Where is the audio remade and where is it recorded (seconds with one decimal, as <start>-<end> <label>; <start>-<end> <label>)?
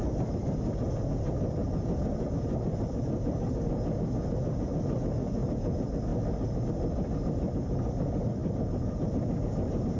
0.0-1.6 recorded; 1.6-3.7 remade; 3.7-10.0 recorded